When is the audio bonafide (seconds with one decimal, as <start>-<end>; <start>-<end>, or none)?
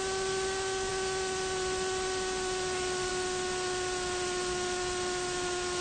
0.0-5.8